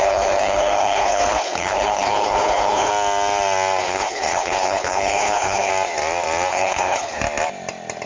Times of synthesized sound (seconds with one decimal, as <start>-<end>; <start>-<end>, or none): 0.0-2.9; 3.8-5.7; 6.5-7.2